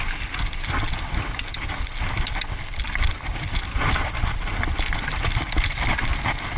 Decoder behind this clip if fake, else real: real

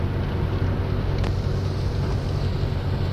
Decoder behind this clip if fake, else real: real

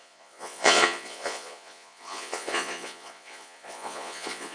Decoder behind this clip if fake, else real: fake, vocoder, Vocos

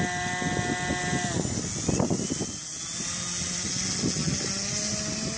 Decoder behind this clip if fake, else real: real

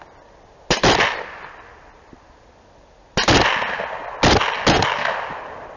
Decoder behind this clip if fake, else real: real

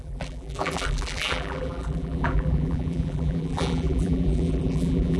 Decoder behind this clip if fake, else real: fake, vocoder, BigVGAN v2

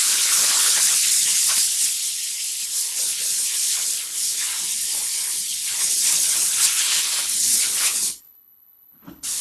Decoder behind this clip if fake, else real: fake, codec, HILCodec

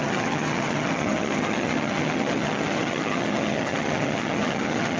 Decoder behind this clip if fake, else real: fake, vocoder, HiFi-GAN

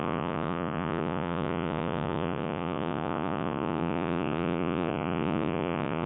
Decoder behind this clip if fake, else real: fake, vocoder, Vocos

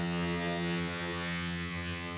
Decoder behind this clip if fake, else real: fake, vocoder, HiFi-GAN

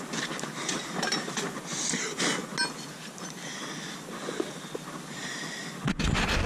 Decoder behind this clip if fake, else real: real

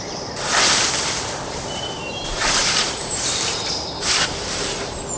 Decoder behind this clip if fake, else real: fake, vocoder, BigVGAN v2